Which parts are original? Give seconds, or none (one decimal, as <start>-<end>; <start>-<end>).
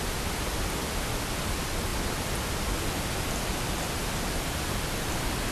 0.0-5.5